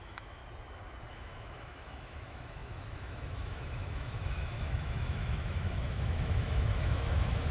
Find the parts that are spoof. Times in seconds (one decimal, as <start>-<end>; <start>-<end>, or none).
0.0-0.4; 1.1-7.5